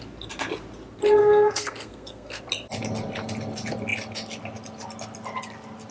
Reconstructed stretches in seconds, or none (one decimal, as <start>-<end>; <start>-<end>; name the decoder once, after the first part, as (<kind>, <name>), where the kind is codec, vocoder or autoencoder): 1.2-2.4 (codec, SNAC)